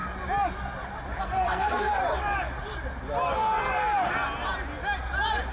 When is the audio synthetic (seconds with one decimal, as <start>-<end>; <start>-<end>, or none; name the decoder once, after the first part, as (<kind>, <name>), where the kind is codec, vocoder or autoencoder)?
1.2-2.0 (codec, SNAC)